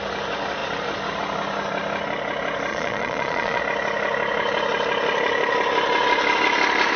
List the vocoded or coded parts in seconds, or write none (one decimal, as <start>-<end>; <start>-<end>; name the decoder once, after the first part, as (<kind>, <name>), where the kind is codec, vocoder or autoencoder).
2.7-3.6 (vocoder, Vocos)